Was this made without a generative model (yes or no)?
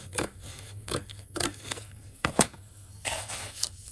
no